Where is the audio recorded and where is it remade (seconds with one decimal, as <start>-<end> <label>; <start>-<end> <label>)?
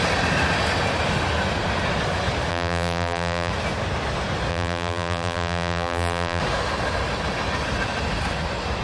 0.0-2.5 recorded; 2.5-3.5 remade; 3.5-4.5 recorded; 4.5-6.4 remade; 6.4-8.8 recorded